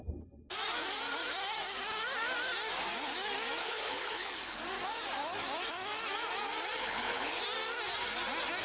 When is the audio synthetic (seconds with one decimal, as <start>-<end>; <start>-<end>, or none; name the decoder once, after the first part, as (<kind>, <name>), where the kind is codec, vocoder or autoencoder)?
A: 3.6-4.6 (codec, HILCodec); 6.8-7.4